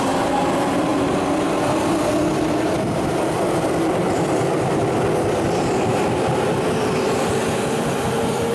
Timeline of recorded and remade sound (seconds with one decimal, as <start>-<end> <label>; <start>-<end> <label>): 0.0-2.3 recorded; 2.3-7.3 remade; 7.3-8.5 recorded